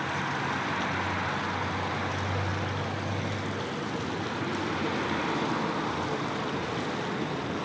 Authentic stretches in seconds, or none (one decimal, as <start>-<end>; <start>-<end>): 0.0-7.6